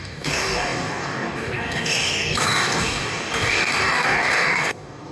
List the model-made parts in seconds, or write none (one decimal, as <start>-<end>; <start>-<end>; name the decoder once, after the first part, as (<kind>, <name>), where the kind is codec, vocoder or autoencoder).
0.0-5.1 (codec, DAC)